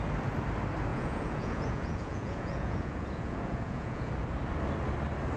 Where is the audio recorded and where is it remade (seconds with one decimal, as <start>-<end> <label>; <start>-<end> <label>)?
0.0-0.9 recorded; 0.9-4.1 remade; 4.1-5.4 recorded